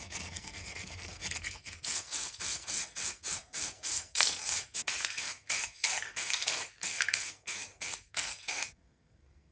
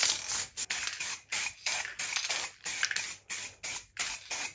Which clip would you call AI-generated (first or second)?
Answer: first